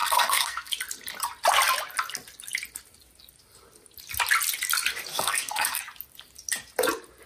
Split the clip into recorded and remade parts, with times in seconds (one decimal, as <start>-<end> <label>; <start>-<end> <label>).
0.0-0.7 remade; 0.7-5.1 recorded; 5.1-5.8 remade; 5.8-7.3 recorded